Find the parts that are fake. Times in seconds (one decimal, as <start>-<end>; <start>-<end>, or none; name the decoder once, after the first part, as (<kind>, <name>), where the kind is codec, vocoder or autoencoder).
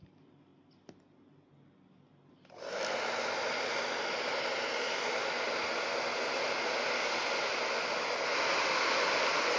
none